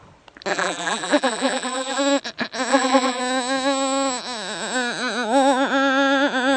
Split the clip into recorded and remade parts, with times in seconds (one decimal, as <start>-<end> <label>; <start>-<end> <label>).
0.0-0.5 recorded; 0.5-2.0 remade; 2.0-2.7 recorded; 2.7-3.2 remade; 3.2-6.6 recorded

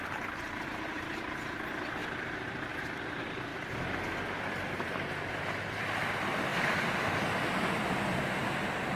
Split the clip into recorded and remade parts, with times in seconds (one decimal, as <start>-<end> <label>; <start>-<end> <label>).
0.0-9.0 remade

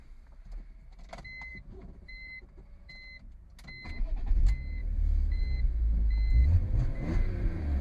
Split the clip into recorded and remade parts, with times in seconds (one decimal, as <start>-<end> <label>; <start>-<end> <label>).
0.0-1.5 recorded; 1.5-2.9 remade; 2.9-4.8 recorded; 4.8-5.4 remade; 5.4-6.4 recorded; 6.4-7.8 remade

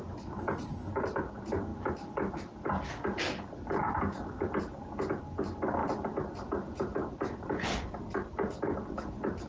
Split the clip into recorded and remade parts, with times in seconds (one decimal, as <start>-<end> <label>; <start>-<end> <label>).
0.0-1.7 recorded; 1.7-5.2 remade; 5.2-5.8 recorded; 5.8-9.5 remade

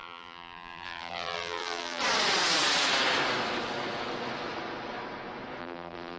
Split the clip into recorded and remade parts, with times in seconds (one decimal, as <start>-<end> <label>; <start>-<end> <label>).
0.0-2.0 remade; 2.0-5.6 recorded; 5.6-6.2 remade

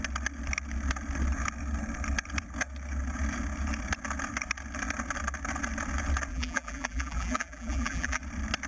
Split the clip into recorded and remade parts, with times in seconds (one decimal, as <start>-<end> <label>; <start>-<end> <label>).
0.0-6.3 recorded; 6.3-8.2 remade; 8.2-8.7 recorded

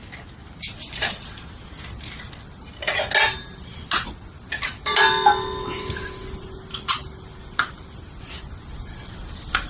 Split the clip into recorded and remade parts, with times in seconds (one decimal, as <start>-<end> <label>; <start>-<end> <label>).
0.0-0.4 recorded; 0.4-1.0 remade; 1.0-4.3 recorded; 4.3-5.1 remade; 5.1-9.7 recorded

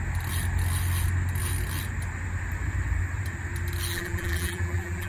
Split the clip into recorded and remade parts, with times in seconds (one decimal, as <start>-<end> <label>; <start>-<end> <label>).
0.0-3.9 recorded; 3.9-5.1 remade